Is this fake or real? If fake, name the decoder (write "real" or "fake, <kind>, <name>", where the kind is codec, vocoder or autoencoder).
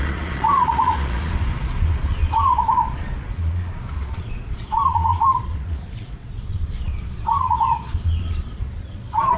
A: fake, vocoder, Vocos